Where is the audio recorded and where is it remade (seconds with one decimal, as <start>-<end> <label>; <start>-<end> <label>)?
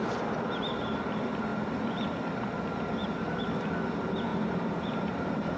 0.0-1.5 recorded; 1.5-2.4 remade; 2.4-3.0 recorded; 3.0-3.6 remade; 3.6-4.3 recorded; 4.3-5.6 remade